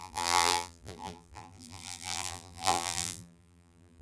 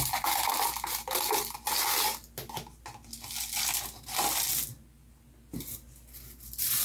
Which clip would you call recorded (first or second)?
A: second